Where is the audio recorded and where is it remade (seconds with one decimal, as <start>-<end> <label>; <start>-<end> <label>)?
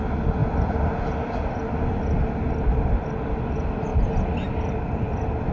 0.0-5.5 recorded